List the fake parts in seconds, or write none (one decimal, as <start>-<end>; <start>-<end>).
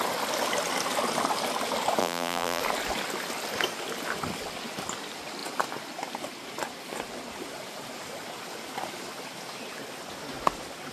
2.0-2.6